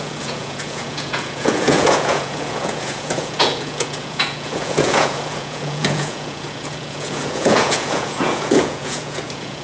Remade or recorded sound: remade